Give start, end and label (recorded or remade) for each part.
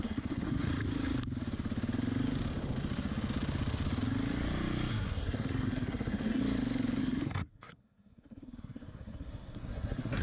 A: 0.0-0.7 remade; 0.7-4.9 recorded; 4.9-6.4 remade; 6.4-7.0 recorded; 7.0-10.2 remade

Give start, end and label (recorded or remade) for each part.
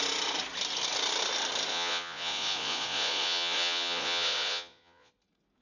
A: 0.0-1.7 recorded; 1.7-5.1 remade; 5.1-5.6 recorded